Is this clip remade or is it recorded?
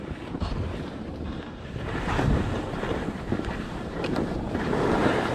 remade